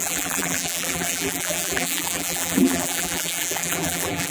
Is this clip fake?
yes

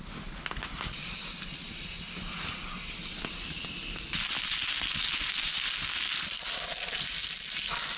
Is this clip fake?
no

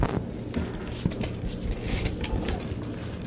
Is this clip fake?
no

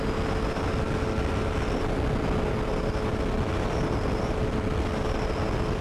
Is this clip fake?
no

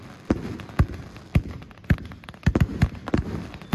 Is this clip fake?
no